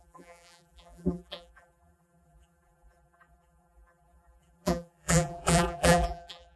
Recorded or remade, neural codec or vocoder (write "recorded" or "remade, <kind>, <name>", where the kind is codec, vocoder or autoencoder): remade, vocoder, BigVGAN v2